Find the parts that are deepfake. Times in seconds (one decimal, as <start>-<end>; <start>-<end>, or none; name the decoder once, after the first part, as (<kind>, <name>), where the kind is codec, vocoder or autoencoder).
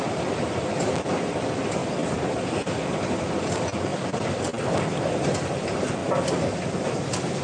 1.8-3.3 (vocoder, BigVGAN v2); 3.9-4.6